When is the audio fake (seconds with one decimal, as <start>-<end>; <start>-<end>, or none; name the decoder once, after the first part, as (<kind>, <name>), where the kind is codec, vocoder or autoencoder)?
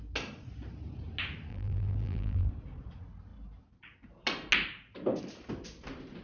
1.5-2.5 (vocoder, BigVGAN v2)